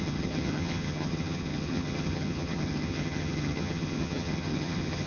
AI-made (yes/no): yes